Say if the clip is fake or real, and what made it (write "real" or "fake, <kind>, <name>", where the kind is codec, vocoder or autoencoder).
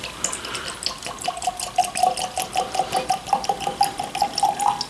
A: real